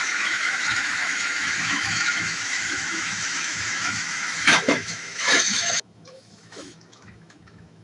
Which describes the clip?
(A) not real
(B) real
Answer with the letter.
A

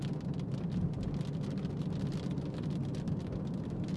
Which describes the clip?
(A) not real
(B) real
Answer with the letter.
B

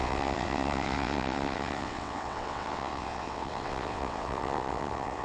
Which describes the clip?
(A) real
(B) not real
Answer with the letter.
B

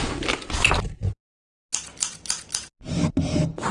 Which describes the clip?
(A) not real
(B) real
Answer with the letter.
B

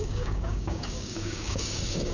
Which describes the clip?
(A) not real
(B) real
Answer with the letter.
A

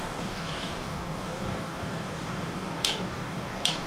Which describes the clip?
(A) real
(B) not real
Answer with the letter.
B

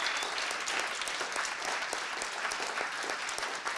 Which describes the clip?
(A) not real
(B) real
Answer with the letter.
B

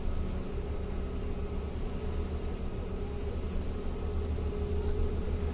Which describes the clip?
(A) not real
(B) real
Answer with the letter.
B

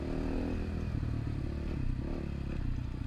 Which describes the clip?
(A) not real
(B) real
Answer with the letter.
B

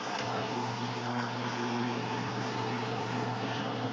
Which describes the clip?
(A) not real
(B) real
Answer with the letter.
A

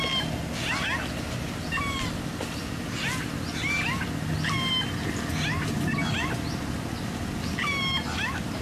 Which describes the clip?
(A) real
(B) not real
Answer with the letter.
A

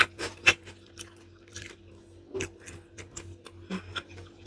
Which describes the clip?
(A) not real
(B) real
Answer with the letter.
B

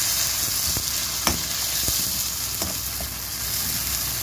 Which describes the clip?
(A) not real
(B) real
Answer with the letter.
B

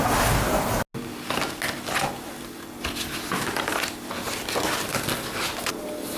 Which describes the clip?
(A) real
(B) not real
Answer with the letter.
A